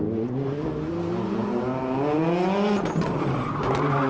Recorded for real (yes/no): yes